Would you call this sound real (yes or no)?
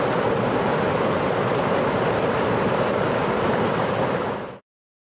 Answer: yes